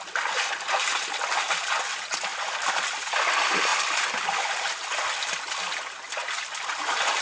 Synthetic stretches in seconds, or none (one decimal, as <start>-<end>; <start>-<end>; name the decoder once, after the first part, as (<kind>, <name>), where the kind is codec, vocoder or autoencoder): none